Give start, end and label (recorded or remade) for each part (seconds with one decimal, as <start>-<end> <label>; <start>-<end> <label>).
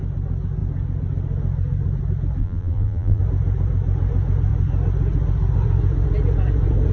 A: 0.0-2.4 recorded; 2.4-3.2 remade; 3.2-6.9 recorded